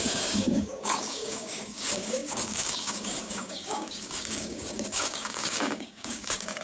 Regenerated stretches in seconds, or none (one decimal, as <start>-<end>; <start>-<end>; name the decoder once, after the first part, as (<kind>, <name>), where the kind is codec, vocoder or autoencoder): 0.0-6.6 (codec, DAC)

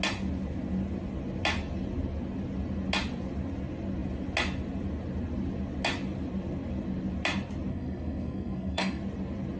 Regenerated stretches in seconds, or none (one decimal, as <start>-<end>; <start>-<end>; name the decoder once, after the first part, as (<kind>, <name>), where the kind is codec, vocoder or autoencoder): 7.7-9.0 (codec, SNAC)

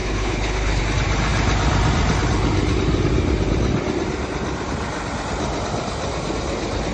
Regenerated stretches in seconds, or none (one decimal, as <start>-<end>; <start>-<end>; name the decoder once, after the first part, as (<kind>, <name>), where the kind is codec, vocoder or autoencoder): 0.0-0.8 (codec, HILCodec)

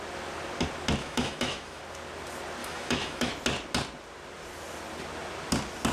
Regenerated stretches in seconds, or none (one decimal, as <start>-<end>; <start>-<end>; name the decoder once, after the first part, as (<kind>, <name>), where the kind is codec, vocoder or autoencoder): 1.0-1.8 (autoencoder, DAC-VAE); 2.6-3.3

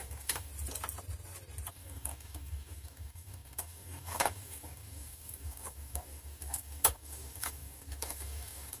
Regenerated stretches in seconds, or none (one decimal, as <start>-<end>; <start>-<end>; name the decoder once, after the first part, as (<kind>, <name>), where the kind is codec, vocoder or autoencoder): 0.0-0.5 (codec, DAC); 1.7-8.8